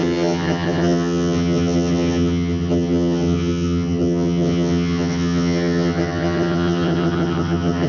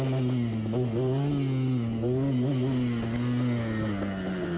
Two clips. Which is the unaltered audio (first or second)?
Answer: second